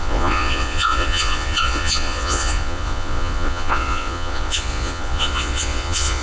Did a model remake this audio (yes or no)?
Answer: yes